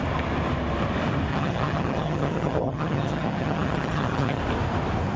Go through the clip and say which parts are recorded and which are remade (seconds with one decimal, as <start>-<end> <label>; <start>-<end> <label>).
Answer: 0.0-1.3 recorded; 1.3-4.4 remade; 4.4-5.2 recorded